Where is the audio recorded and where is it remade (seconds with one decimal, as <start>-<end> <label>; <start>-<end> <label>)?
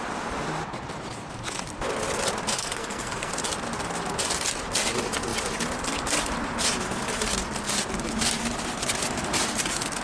0.0-2.6 recorded; 2.6-3.3 remade; 3.3-10.0 recorded